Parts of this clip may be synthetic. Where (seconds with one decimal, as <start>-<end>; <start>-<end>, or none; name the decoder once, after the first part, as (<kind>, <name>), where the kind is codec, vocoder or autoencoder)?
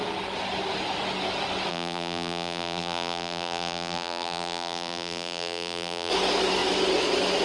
1.7-6.1 (vocoder, BigVGAN v2)